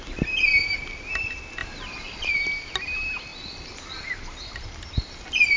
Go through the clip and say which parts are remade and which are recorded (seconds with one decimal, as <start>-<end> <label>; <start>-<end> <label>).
0.0-1.6 recorded; 1.6-2.3 remade; 2.3-5.6 recorded